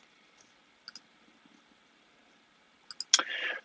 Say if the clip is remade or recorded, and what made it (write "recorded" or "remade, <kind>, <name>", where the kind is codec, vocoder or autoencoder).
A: recorded